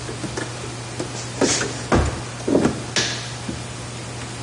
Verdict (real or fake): real